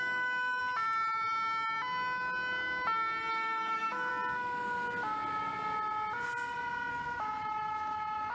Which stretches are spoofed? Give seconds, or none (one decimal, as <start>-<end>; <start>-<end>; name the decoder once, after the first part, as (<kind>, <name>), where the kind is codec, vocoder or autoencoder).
0.0-0.6 (autoencoder, DAC-VAE); 3.3-4.1; 6.9-8.3